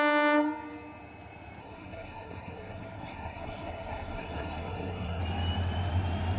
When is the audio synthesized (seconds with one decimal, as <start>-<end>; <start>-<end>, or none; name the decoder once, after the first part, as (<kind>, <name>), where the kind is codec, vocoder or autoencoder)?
1.6-5.2 (codec, SNAC)